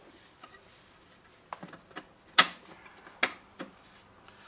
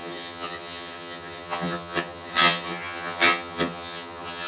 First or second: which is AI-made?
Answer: second